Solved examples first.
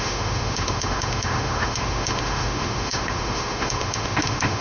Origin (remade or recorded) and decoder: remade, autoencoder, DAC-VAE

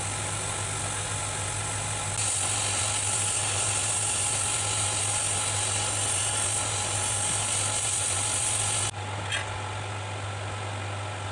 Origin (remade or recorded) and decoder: recorded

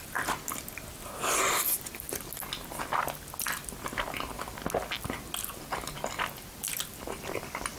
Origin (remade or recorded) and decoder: recorded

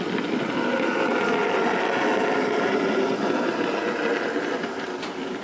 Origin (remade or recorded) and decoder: recorded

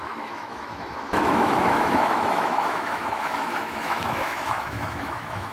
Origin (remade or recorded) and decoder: remade, autoencoder, DAC-VAE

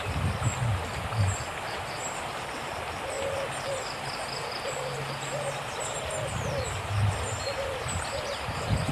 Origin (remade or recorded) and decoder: recorded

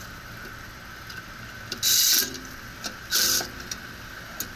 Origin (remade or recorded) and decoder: recorded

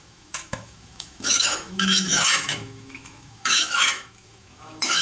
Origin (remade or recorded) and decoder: remade, autoencoder, DAC-VAE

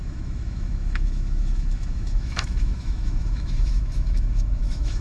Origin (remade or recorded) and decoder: remade, autoencoder, DAC-VAE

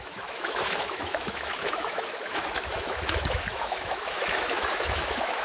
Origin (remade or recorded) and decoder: remade, autoencoder, DAC-VAE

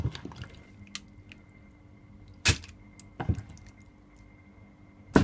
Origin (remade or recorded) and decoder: recorded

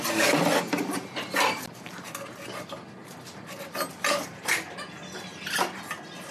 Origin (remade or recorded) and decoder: recorded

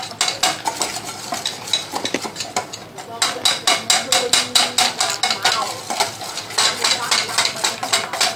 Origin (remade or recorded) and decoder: recorded